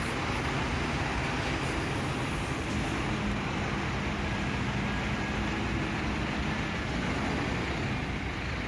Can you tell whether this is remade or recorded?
recorded